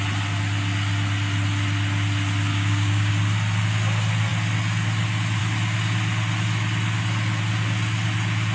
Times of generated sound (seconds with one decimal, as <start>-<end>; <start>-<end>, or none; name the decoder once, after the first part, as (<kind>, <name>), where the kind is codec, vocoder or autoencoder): 2.5-3.1 (codec, DAC)